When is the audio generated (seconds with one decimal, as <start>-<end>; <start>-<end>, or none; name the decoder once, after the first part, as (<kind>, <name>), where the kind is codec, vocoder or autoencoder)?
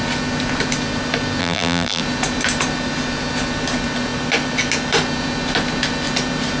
1.4-2.0 (vocoder, BigVGAN v2)